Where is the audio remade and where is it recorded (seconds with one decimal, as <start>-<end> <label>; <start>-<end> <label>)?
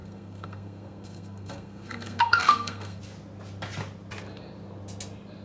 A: 0.0-3.0 remade; 3.0-5.4 recorded